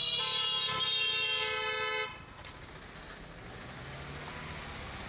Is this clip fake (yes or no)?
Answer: no